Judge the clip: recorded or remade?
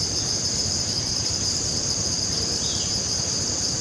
remade